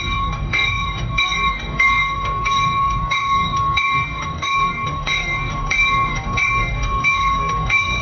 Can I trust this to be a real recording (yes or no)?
no